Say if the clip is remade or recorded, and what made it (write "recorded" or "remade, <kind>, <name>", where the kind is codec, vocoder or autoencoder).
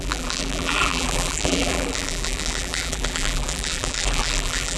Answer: remade, vocoder, BigVGAN v2